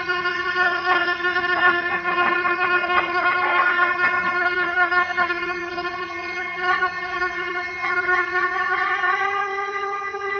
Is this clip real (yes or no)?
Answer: no